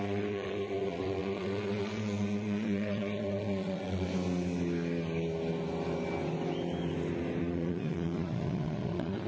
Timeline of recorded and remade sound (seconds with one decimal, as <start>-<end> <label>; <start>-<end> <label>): 0.0-4.1 remade; 4.1-7.4 recorded; 7.4-9.3 remade